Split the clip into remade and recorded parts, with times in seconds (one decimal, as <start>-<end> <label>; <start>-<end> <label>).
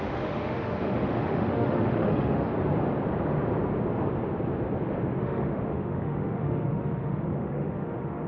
0.0-2.5 remade; 2.5-5.2 recorded; 5.2-8.3 remade